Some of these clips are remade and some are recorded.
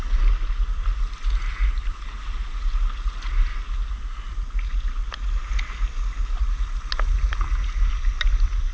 recorded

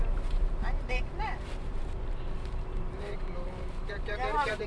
remade